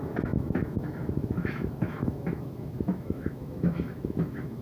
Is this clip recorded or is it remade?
remade